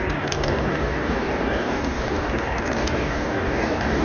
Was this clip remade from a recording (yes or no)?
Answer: yes